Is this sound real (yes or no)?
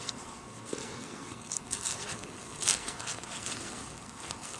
no